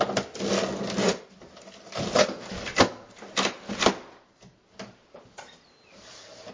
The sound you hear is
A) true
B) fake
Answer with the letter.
A